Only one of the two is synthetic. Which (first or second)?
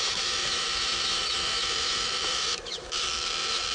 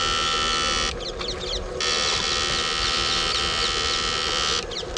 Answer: first